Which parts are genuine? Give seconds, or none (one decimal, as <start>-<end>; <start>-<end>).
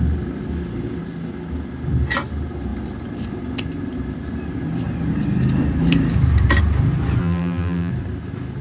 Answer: 0.0-7.2; 7.9-8.6